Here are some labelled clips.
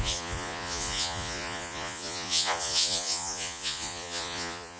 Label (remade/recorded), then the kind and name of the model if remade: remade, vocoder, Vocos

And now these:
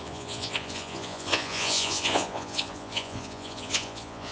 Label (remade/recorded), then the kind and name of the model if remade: remade, vocoder, Vocos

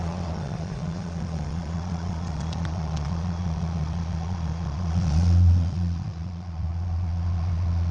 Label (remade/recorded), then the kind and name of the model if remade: remade, vocoder, Vocos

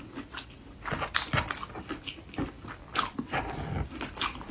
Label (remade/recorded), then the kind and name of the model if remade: recorded